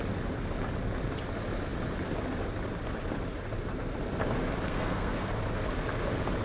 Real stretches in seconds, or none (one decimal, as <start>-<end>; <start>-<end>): 0.0-4.7; 5.3-6.4